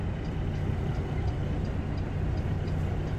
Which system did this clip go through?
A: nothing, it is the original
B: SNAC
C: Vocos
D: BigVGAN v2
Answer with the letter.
A